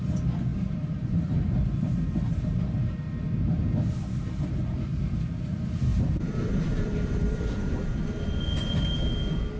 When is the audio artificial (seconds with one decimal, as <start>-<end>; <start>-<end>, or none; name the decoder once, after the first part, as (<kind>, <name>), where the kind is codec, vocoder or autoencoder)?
0.5-2.8 (vocoder, BigVGAN v2); 5.9-8.3